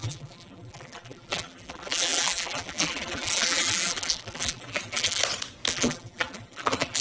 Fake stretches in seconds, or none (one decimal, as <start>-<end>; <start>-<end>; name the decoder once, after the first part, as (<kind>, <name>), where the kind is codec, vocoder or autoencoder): 0.0-5.2 (vocoder, BigVGAN v2); 5.7-7.0